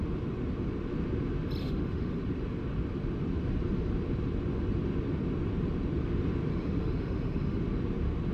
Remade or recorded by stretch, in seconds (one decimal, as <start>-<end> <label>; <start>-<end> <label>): 0.0-1.6 recorded; 1.6-2.2 remade; 2.2-6.5 recorded; 6.5-7.6 remade; 7.6-8.3 recorded